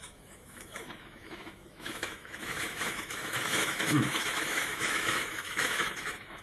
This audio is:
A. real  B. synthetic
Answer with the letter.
B